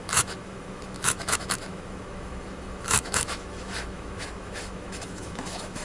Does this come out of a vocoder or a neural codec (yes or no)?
yes